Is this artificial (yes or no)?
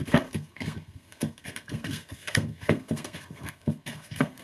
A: yes